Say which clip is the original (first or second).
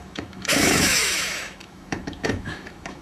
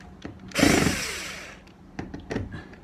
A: second